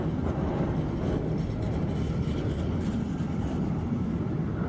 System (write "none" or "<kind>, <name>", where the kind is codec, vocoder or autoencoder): none